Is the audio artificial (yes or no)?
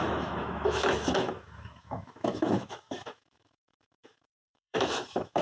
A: yes